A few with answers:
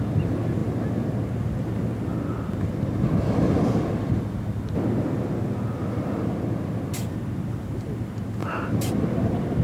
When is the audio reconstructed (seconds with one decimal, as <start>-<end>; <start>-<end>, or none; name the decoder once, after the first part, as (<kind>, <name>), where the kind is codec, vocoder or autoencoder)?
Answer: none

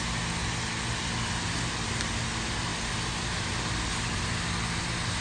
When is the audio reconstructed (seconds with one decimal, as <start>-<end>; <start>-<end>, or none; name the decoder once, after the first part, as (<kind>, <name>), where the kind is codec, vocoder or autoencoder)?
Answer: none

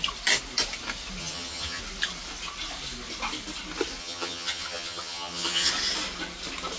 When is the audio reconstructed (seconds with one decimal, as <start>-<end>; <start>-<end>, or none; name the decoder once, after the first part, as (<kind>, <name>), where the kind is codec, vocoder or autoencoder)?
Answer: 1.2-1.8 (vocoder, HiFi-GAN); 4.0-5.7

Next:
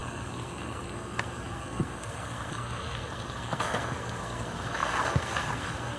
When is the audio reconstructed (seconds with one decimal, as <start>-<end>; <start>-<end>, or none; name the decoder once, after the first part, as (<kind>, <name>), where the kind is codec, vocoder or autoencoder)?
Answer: 0.0-6.0 (codec, SNAC)

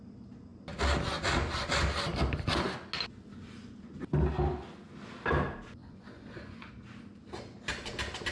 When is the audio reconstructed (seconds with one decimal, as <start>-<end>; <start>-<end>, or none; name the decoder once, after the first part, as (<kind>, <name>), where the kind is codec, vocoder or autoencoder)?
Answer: 5.8-6.7 (vocoder, Vocos)

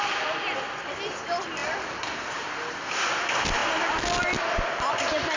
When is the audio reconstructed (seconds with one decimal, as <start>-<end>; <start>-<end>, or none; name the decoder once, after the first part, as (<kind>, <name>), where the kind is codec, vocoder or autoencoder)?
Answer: none

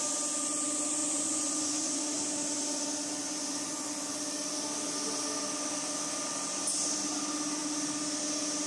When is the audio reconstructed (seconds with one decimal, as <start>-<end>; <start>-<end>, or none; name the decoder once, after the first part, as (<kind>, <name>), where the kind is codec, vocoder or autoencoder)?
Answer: 1.0-2.0 (vocoder, Vocos); 3.2-3.9

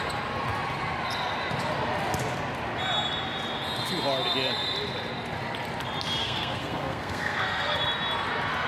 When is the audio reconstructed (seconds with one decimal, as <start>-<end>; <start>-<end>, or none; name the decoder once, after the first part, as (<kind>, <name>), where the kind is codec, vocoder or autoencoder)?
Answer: 6.2-7.8 (codec, SNAC)